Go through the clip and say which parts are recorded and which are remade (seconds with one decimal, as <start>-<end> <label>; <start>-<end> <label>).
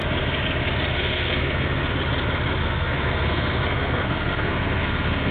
0.0-0.9 recorded; 0.9-1.8 remade; 1.8-2.6 recorded; 2.6-5.3 remade